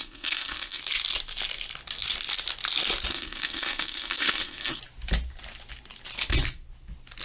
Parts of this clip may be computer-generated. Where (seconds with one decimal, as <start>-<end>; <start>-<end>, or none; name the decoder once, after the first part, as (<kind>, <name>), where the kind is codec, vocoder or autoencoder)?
0.0-0.8 (codec, SNAC); 3.1-4.8